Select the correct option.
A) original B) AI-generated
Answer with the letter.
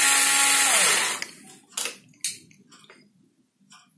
A